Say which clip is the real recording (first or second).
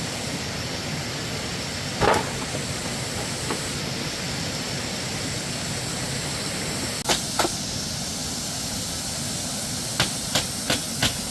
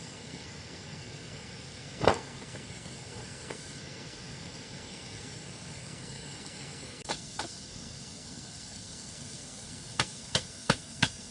first